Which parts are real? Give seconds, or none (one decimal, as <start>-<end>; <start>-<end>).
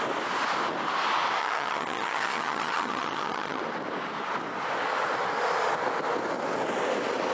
0.0-1.4; 3.6-7.3